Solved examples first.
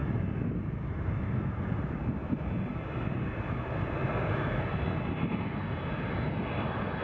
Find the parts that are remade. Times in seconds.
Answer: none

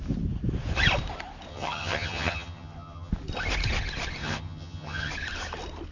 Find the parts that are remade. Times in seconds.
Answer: 1.5-3.1 (vocoder, HiFi-GAN); 4.2-5.1

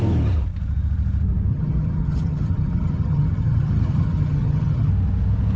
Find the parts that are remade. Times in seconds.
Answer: 1.5-4.9 (vocoder, HiFi-GAN)

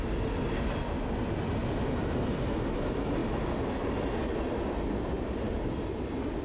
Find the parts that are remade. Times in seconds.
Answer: none

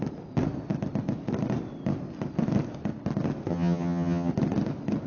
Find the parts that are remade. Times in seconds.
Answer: 3.5-4.3 (vocoder, HiFi-GAN)

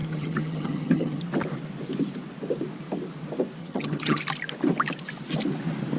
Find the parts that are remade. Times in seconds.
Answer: 0.0-1.2 (vocoder, HiFi-GAN); 3.6-4.2